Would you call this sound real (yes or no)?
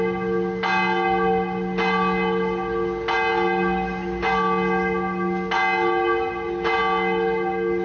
yes